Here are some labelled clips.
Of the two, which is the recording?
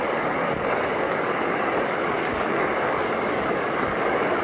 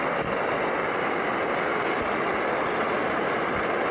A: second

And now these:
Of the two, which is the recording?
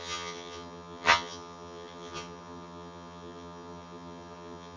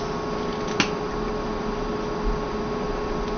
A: second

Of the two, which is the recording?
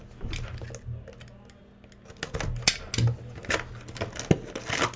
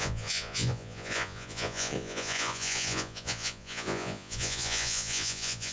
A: first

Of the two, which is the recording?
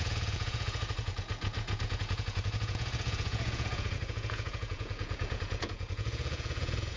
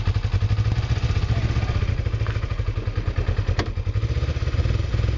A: second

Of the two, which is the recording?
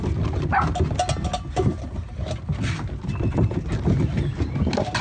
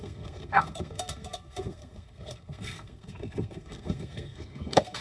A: first